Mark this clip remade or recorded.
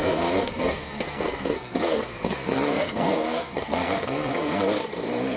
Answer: remade